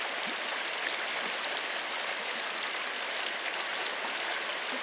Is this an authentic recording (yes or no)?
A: yes